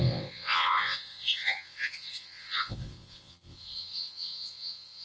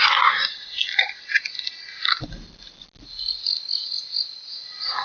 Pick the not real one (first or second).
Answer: first